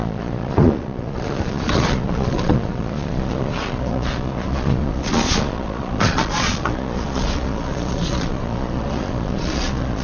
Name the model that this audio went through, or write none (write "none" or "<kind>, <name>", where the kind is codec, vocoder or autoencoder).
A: vocoder, Vocos